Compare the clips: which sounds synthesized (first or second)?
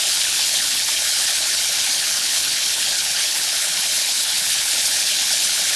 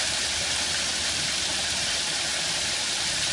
first